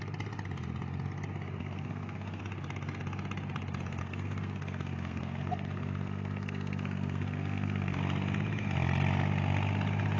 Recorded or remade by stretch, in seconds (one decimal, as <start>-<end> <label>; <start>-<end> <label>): 0.0-1.6 recorded; 1.6-2.4 remade; 2.4-4.0 recorded; 4.0-8.0 remade; 8.0-10.2 recorded